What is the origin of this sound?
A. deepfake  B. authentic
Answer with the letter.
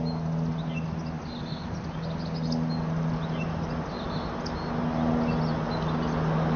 B